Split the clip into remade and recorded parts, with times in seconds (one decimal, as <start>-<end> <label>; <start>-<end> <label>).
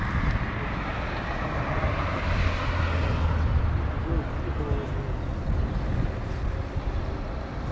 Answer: 0.0-7.7 recorded